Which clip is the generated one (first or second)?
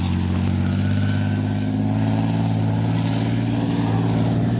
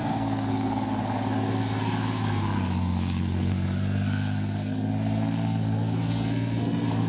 second